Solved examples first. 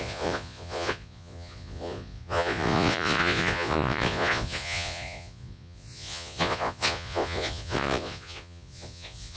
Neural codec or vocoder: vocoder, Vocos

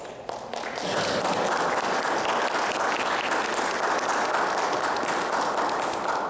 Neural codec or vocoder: none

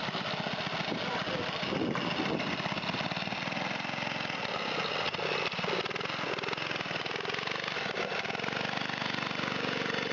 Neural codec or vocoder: none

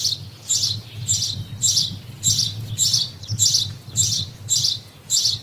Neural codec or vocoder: none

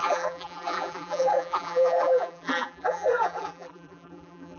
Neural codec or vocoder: vocoder, BigVGAN v2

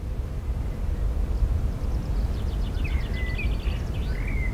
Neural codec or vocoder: none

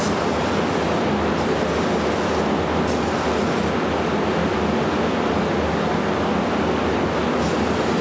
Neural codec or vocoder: none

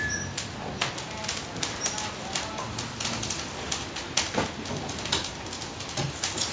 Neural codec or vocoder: none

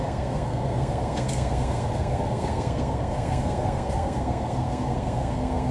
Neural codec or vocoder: codec, SNAC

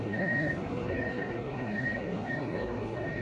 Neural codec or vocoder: codec, SNAC